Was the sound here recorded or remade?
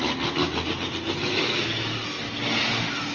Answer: recorded